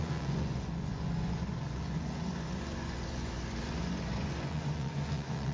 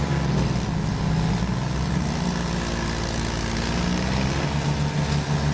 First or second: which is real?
second